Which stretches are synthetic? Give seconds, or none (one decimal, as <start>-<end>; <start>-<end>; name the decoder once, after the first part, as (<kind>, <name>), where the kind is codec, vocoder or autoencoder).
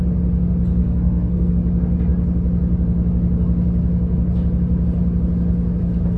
0.8-1.5 (codec, SNAC)